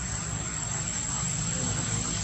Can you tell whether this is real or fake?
real